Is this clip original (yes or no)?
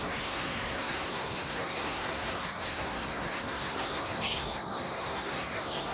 no